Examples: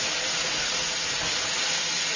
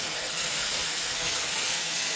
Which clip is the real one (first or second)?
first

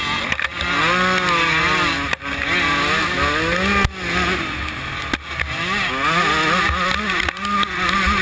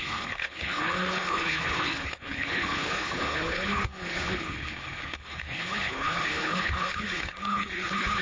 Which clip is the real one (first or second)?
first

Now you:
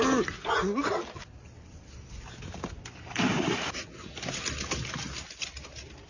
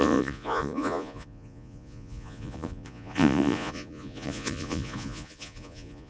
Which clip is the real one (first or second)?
first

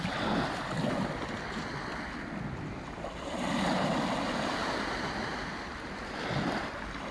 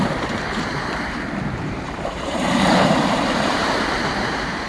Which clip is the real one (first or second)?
first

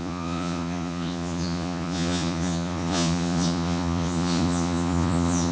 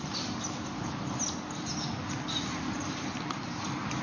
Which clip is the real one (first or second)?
second